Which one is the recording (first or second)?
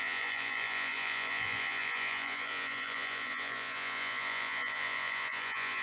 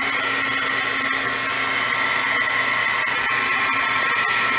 second